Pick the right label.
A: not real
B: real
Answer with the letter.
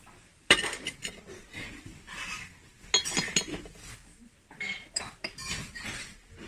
B